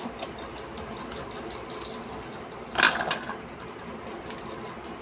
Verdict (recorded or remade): recorded